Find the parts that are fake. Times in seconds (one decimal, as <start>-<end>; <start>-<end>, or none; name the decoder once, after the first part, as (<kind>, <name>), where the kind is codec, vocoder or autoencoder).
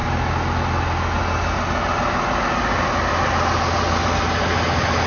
none